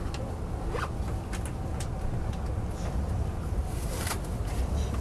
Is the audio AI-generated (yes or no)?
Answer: no